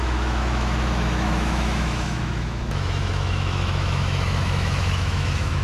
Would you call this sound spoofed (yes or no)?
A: yes